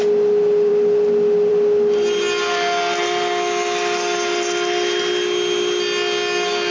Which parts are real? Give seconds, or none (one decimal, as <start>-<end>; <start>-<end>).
0.0-6.7